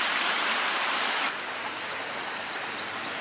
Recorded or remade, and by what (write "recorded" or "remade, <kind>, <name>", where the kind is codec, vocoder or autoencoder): remade, vocoder, BigVGAN v2